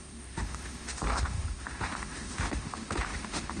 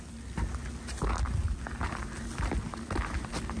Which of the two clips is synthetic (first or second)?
first